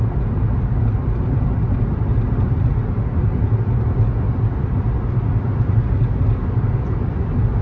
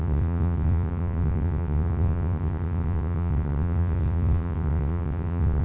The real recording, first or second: first